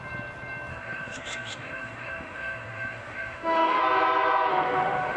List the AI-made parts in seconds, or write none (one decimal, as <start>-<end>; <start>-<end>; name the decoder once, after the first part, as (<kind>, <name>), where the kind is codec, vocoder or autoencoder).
0.7-3.8 (autoencoder, DAC-VAE); 4.5-5.2